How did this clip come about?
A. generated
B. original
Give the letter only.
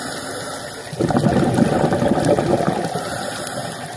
B